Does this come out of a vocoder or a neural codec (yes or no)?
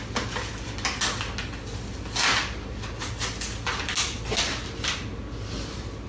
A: no